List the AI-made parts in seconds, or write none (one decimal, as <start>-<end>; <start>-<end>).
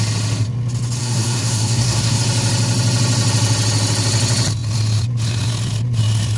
1.0-2.2